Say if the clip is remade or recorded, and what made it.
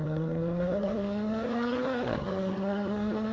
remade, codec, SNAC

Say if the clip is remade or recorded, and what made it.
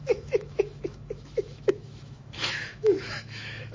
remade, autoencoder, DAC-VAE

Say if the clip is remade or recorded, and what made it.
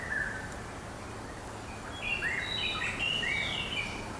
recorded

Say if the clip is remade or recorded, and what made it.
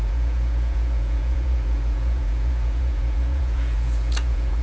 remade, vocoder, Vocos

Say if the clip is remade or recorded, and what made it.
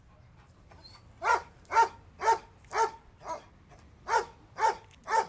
recorded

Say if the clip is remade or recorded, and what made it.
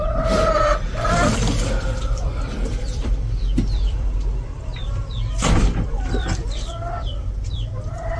remade, vocoder, BigVGAN v2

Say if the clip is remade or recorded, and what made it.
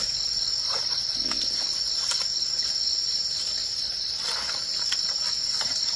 recorded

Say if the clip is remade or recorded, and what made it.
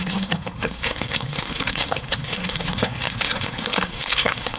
remade, codec, SNAC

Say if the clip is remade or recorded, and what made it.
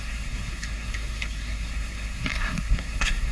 remade, codec, SNAC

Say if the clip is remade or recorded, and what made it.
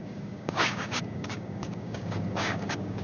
remade, codec, DAC